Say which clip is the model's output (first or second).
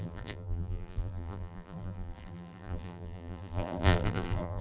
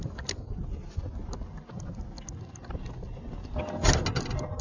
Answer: first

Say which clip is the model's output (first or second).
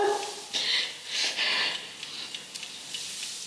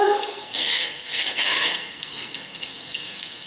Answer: second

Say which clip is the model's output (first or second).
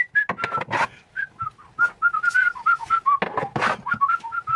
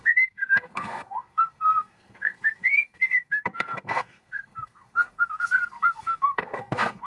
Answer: second